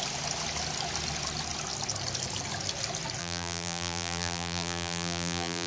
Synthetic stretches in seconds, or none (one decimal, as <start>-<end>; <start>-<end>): 3.2-5.7